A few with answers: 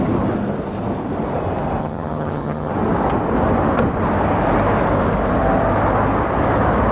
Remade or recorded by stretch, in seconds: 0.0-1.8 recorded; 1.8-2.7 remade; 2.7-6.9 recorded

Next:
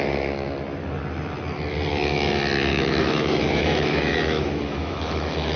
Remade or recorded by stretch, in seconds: 0.0-2.7 recorded; 2.7-5.6 remade

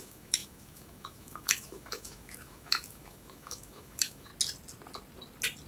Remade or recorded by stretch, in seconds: 0.0-4.3 remade; 4.3-5.7 recorded

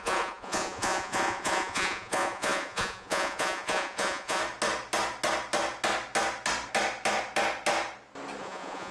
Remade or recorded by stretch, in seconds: 0.0-4.4 remade; 4.4-8.4 recorded; 8.4-8.9 remade

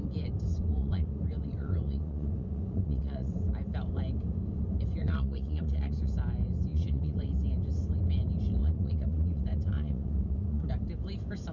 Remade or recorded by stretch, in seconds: 0.0-0.5 recorded; 0.5-3.3 remade; 3.3-5.0 recorded; 5.0-6.1 remade; 6.1-6.7 recorded; 6.7-7.3 remade; 7.3-8.6 recorded; 8.6-10.7 remade; 10.7-11.5 recorded